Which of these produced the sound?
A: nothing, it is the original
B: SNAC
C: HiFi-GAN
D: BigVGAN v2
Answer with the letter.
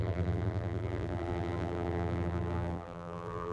D